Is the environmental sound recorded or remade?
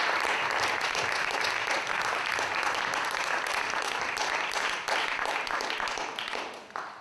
recorded